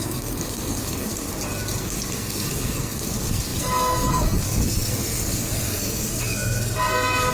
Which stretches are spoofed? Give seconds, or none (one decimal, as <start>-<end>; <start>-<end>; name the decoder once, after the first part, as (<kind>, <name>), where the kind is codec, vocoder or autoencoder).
0.0-1.3 (codec, SNAC); 1.8-7.3